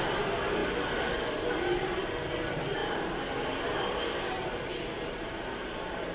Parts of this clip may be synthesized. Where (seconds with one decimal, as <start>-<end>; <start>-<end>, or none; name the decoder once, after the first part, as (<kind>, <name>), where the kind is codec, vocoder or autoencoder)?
none